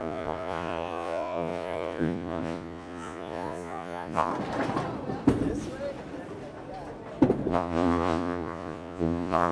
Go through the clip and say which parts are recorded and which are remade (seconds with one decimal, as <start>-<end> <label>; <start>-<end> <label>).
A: 0.0-4.3 remade; 4.3-7.5 recorded; 7.5-9.5 remade